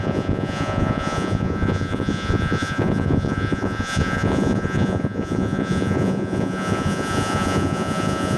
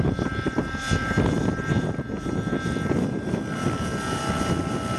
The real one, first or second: second